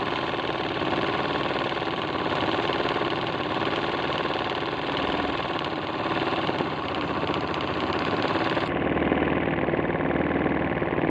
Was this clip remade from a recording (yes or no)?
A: yes